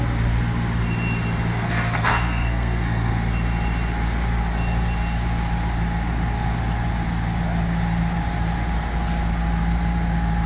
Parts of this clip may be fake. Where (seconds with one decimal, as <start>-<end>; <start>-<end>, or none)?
1.5-3.1